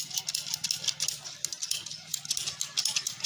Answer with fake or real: real